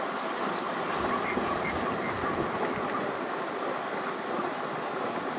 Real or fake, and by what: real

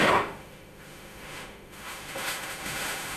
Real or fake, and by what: fake, autoencoder, DAC-VAE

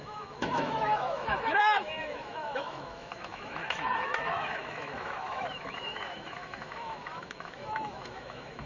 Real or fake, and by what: fake, autoencoder, DAC-VAE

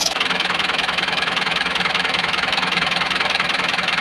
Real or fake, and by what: fake, autoencoder, DAC-VAE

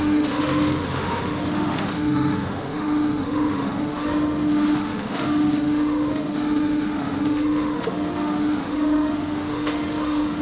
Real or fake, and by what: fake, autoencoder, DAC-VAE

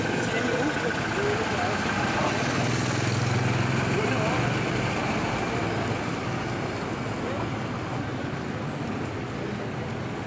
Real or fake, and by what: real